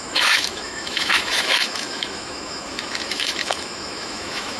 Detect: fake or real fake